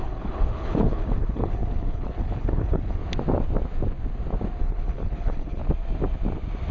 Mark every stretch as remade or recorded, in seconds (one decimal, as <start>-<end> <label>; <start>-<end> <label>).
0.0-3.0 remade; 3.0-4.6 recorded; 4.6-5.6 remade; 5.6-6.7 recorded